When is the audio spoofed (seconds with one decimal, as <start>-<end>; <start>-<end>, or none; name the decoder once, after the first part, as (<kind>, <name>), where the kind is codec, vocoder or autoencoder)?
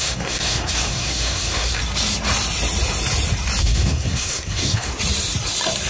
0.0-1.8 (codec, SNAC); 3.6-4.9